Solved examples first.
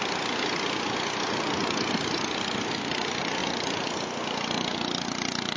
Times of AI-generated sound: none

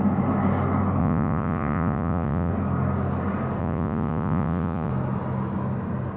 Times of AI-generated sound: 1.0-2.5 (vocoder, Vocos); 3.6-4.9

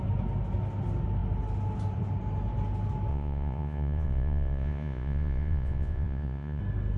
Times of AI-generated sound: 3.1-6.6 (vocoder, Vocos)